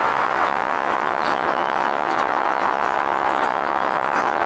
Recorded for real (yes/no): no